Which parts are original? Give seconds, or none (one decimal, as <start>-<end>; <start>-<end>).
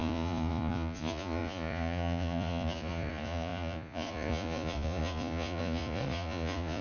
none